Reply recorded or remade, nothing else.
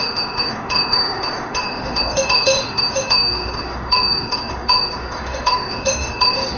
remade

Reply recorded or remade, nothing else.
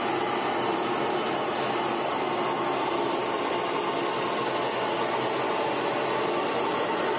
recorded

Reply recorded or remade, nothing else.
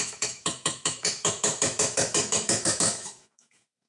remade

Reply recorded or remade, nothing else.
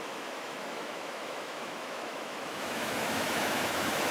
remade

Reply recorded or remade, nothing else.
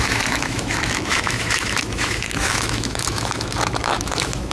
remade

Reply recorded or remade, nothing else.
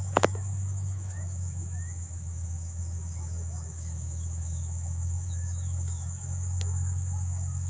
remade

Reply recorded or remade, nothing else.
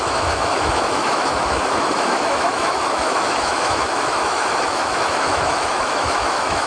remade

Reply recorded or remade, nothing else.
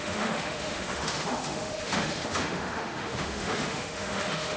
remade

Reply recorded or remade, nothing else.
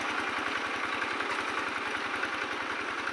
recorded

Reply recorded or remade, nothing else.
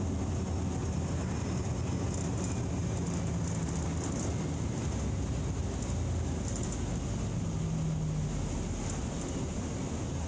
recorded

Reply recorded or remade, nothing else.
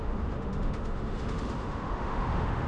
remade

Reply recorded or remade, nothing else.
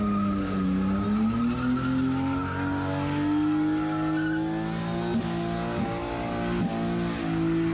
recorded